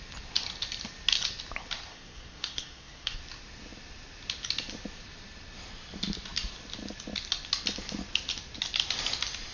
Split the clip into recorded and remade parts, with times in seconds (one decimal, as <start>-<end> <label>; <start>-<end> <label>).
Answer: 0.0-1.9 recorded; 1.9-3.2 remade; 3.2-9.5 recorded